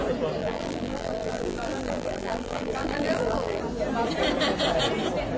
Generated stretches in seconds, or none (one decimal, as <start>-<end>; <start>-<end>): 0.4-3.6